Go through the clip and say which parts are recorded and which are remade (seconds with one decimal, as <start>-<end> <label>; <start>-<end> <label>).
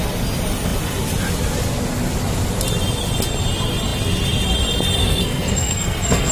0.0-5.0 recorded; 5.0-6.3 remade